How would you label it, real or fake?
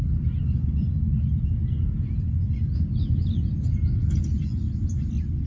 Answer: real